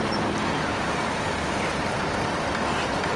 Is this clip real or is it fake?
real